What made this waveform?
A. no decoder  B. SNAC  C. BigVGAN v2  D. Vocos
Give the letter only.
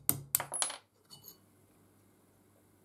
A